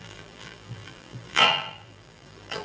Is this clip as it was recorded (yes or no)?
no